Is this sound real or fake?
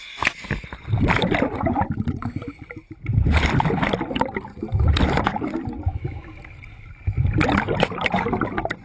real